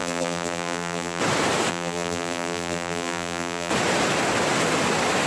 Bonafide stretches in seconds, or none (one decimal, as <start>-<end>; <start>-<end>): 1.2-1.7; 3.7-5.3